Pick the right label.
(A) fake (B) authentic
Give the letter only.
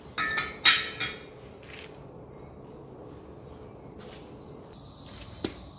B